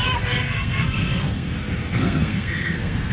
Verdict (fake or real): fake